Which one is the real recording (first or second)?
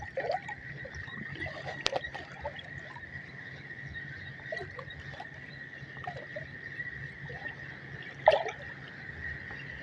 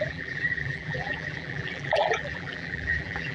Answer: first